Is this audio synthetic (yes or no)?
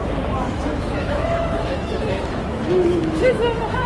yes